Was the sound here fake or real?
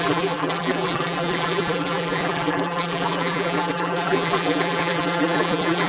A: fake